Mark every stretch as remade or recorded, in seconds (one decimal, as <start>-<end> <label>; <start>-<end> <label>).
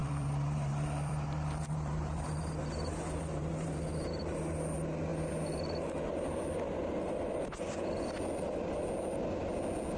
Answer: 0.0-4.4 remade; 4.4-10.0 recorded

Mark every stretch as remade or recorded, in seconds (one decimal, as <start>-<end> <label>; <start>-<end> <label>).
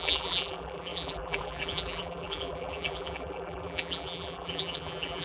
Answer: 0.0-5.2 remade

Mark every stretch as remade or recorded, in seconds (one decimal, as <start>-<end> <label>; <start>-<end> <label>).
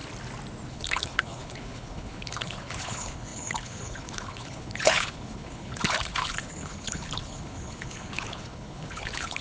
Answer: 0.0-0.7 recorded; 0.7-9.4 remade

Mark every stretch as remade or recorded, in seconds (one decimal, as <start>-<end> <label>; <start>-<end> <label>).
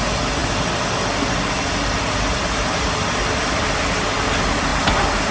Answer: 0.0-5.3 recorded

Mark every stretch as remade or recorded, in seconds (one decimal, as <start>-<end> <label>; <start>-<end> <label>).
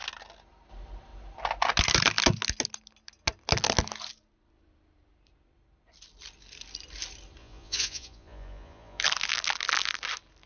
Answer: 0.0-7.4 recorded; 7.4-9.0 remade; 9.0-10.5 recorded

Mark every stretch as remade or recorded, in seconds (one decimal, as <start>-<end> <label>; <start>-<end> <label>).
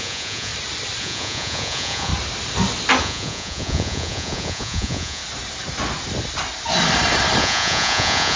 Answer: 0.0-0.5 remade; 0.5-1.0 recorded; 1.0-2.1 remade; 2.1-3.0 recorded; 3.0-5.2 remade; 5.2-7.4 recorded; 7.4-8.4 remade